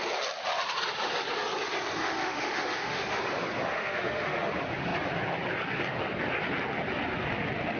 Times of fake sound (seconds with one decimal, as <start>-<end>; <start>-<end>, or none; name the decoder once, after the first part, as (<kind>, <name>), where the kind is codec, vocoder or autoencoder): 2.0-3.2 (autoencoder, DAC-VAE); 3.7-4.5